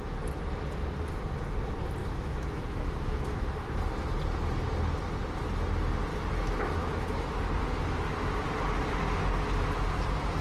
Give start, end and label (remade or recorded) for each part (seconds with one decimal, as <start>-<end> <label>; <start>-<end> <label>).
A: 0.0-2.0 recorded; 2.0-3.8 remade; 3.8-6.1 recorded; 6.1-7.4 remade; 7.4-10.4 recorded